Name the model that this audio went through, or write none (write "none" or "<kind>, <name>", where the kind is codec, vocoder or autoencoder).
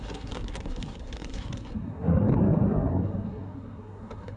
codec, SNAC